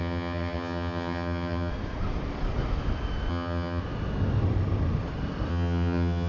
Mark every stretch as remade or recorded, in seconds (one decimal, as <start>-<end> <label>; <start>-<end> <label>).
0.0-1.7 remade; 1.7-3.3 recorded; 3.3-3.8 remade; 3.8-5.5 recorded; 5.5-6.3 remade